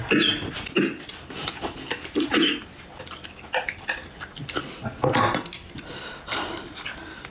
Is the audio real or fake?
real